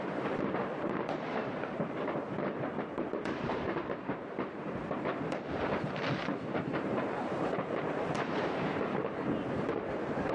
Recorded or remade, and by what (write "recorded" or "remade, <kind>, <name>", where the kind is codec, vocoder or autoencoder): remade, vocoder, BigVGAN v2